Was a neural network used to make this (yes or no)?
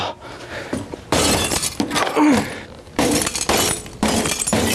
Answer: no